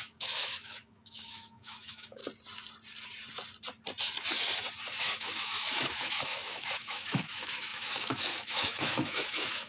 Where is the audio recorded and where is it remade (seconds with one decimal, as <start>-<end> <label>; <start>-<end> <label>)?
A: 0.0-2.2 remade; 2.2-5.0 recorded; 5.0-9.7 remade